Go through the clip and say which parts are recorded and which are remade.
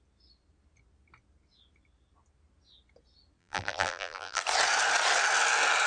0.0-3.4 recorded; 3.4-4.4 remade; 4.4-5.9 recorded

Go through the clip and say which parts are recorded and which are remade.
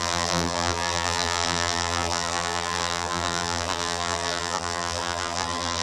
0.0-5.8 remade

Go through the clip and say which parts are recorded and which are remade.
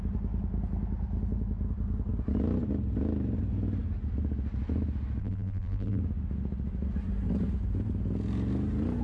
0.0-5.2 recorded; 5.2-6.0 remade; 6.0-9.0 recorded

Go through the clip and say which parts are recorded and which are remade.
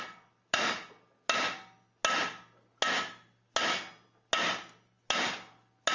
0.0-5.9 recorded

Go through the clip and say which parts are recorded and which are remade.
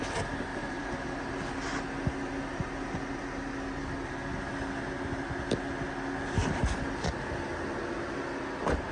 0.0-0.5 recorded; 0.5-1.1 remade; 1.1-6.4 recorded; 6.4-7.1 remade; 7.1-8.9 recorded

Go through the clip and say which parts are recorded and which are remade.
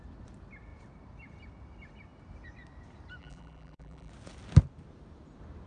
0.0-3.2 recorded; 3.2-4.1 remade; 4.1-5.7 recorded